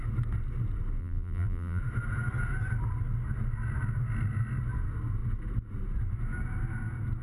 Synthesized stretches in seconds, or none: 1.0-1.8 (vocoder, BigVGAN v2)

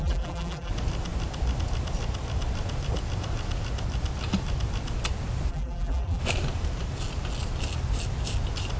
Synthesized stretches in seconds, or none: 0.0-0.7 (vocoder, BigVGAN v2); 5.5-6.2

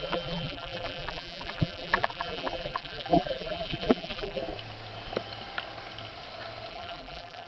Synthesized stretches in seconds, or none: 0.0-4.4 (vocoder, BigVGAN v2); 6.7-7.5

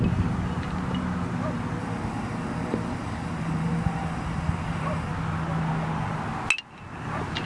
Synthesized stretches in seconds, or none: 1.8-5.1 (vocoder, BigVGAN v2)

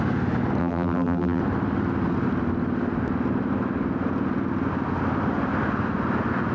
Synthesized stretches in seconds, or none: 0.6-1.4 (vocoder, BigVGAN v2)

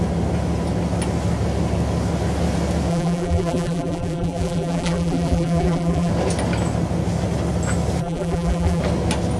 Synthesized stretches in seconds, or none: 2.9-6.1 (vocoder, BigVGAN v2); 8.0-8.8